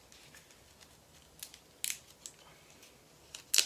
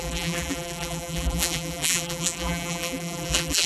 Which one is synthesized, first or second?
second